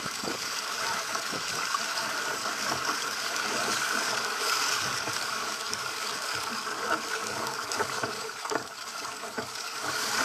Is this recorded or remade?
remade